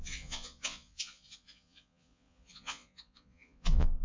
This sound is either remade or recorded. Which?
remade